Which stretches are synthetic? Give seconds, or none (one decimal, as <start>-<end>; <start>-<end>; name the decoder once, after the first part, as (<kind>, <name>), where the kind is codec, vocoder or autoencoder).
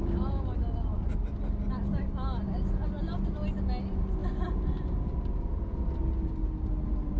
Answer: none